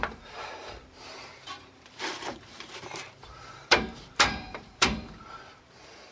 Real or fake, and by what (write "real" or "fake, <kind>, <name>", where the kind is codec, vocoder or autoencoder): fake, vocoder, BigVGAN v2